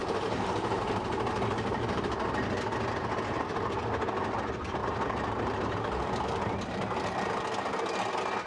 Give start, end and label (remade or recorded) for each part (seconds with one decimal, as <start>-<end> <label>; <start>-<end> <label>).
0.0-2.1 remade; 2.1-4.8 recorded; 4.8-7.3 remade; 7.3-8.5 recorded